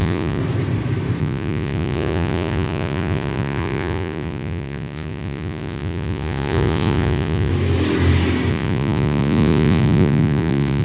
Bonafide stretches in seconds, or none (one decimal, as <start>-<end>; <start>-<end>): 0.4-1.2; 7.5-8.5

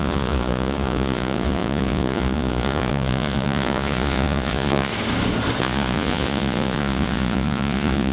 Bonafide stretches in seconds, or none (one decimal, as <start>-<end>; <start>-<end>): 4.9-5.6

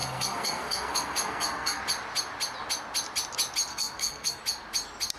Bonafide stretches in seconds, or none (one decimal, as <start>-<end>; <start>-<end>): 1.8-3.7; 4.4-5.2

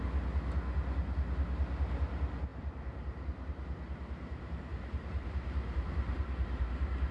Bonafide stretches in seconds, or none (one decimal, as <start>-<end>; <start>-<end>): 0.0-2.5